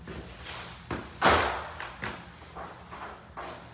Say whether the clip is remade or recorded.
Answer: recorded